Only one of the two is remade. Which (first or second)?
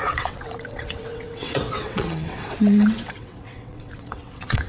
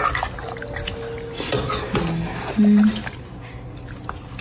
first